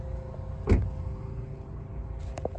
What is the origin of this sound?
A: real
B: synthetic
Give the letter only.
A